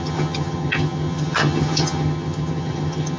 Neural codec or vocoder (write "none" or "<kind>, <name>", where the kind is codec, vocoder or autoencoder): vocoder, HiFi-GAN